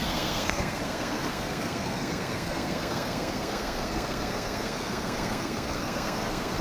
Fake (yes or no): yes